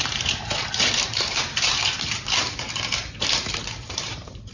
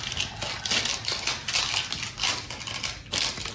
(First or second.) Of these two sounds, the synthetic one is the first